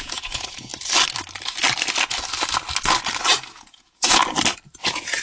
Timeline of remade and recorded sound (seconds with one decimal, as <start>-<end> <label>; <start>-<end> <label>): 0.0-0.7 remade; 0.7-3.5 recorded; 3.5-4.2 remade; 4.2-4.8 recorded; 4.8-5.2 remade